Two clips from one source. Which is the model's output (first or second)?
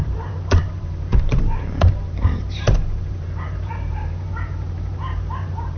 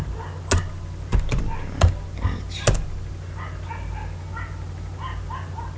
first